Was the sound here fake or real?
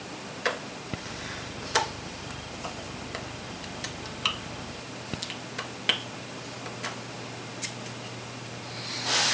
real